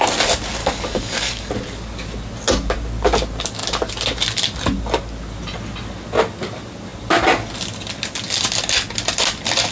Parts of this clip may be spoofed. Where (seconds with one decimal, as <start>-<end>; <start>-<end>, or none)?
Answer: 0.6-1.5